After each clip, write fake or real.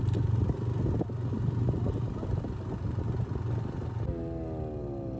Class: real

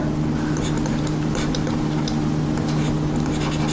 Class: real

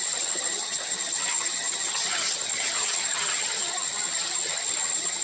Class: fake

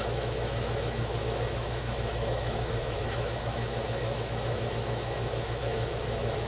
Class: fake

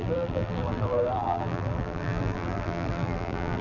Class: fake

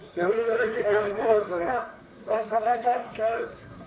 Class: fake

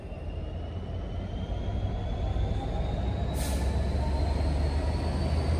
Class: real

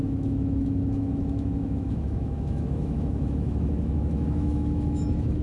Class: fake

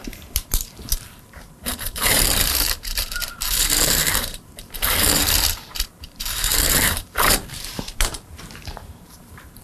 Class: fake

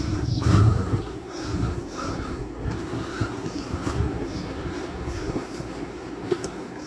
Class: fake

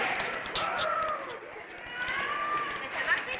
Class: real